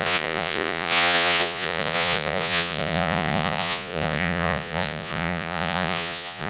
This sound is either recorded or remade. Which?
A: remade